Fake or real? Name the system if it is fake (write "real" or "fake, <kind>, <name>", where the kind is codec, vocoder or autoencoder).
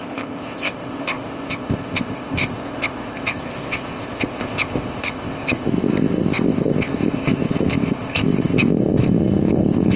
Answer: fake, codec, ZipCodec